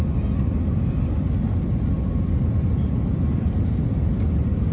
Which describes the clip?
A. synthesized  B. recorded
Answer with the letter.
B